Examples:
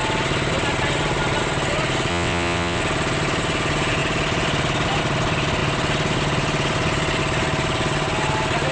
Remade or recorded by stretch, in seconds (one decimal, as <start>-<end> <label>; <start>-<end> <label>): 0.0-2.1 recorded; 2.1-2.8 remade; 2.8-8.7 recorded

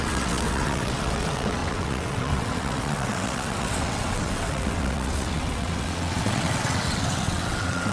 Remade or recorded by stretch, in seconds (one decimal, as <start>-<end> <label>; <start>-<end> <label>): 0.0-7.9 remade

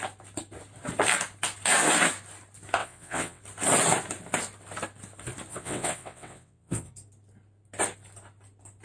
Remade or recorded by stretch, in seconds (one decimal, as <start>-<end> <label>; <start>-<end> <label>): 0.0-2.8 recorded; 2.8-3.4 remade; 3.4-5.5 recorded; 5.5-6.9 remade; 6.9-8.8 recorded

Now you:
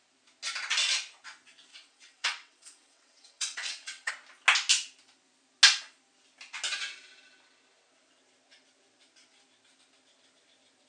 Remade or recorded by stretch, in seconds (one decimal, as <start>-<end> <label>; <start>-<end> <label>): 0.0-1.7 recorded; 1.7-4.1 remade; 4.1-10.9 recorded